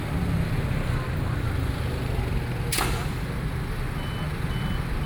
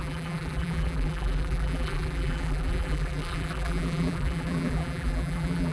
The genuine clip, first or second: first